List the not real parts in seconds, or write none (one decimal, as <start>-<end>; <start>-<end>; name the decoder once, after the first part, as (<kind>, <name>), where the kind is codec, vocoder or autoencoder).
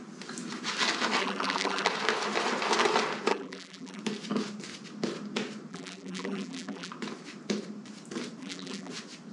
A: 1.2-1.9 (vocoder, BigVGAN v2); 3.3-4.0; 5.7-6.9; 8.4-8.9